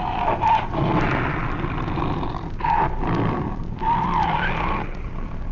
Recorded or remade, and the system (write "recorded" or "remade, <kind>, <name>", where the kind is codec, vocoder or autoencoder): recorded